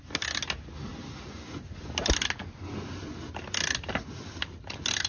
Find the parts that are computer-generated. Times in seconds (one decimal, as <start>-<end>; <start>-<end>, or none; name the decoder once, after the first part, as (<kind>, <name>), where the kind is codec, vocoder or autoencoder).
none